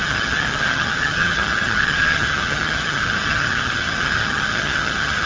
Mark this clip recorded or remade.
remade